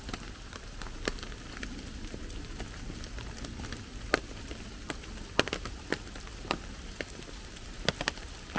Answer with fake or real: real